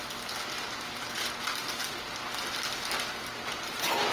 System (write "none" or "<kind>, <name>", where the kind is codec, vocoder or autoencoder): none